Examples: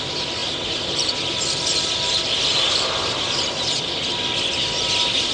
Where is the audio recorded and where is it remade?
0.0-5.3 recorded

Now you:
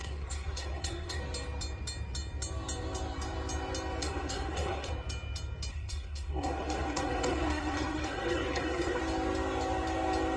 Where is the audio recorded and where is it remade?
0.0-1.2 remade; 1.2-4.0 recorded; 4.0-4.9 remade; 4.9-5.7 recorded; 5.7-9.0 remade; 9.0-10.4 recorded

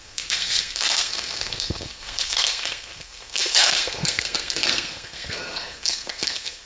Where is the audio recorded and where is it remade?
0.0-6.7 remade

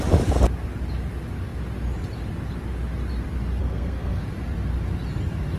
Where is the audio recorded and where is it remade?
0.0-3.6 recorded; 3.6-4.2 remade; 4.2-5.6 recorded